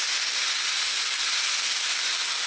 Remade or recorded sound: recorded